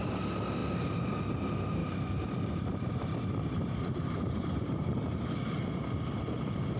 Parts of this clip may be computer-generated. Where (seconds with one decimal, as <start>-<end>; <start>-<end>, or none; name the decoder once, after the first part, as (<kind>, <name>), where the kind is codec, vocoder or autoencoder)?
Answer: 1.8-5.0 (vocoder, BigVGAN v2)